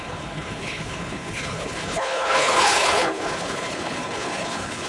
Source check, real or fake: fake